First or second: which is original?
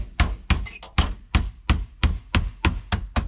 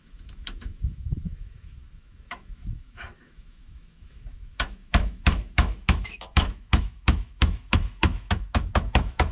first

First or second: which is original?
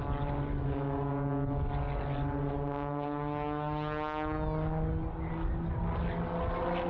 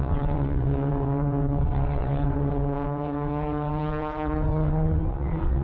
first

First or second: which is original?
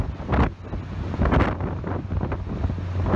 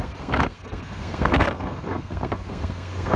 first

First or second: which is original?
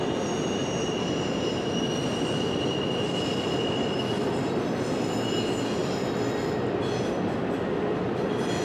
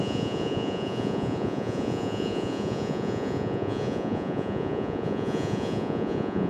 first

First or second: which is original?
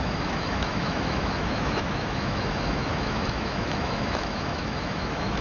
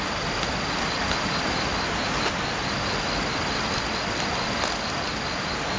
second